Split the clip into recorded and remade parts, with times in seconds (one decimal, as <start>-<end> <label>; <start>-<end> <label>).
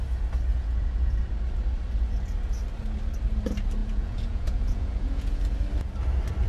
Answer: 0.0-0.5 recorded; 0.5-1.2 remade; 1.2-3.8 recorded; 3.8-5.4 remade; 5.4-6.5 recorded